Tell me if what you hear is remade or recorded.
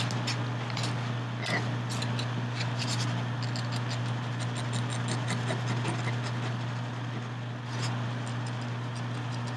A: recorded